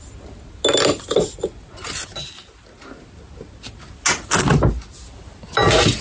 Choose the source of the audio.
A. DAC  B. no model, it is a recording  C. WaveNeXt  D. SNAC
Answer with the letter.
B